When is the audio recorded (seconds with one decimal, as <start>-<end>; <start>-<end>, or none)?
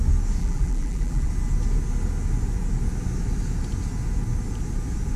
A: 0.0-0.4; 1.3-5.2